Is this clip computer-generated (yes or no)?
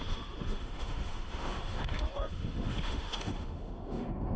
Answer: yes